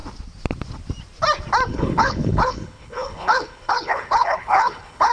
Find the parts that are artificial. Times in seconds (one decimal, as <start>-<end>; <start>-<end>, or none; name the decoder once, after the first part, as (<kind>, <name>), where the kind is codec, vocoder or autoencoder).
1.7-5.1 (codec, HILCodec)